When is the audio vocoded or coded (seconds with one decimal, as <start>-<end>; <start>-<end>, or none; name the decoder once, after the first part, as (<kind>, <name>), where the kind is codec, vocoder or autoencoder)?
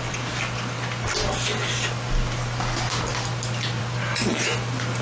none